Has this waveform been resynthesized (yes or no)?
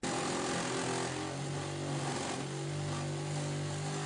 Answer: no